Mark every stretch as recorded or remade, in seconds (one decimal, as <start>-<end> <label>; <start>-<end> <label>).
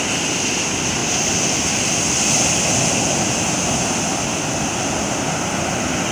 0.0-6.1 recorded